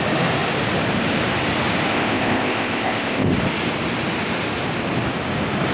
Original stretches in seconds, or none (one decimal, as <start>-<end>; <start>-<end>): 0.0-1.9; 3.3-5.7